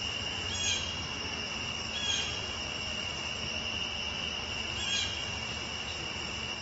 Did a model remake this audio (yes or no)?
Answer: no